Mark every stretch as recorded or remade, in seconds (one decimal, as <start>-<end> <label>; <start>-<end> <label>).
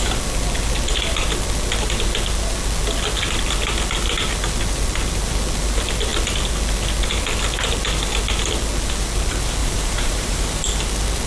0.0-9.6 recorded; 9.6-10.7 remade; 10.7-11.3 recorded